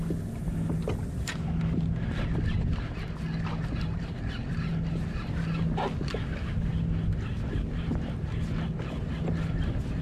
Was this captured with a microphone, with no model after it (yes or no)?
yes